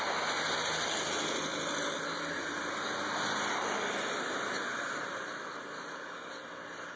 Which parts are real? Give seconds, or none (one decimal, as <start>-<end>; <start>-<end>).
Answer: 0.0-7.0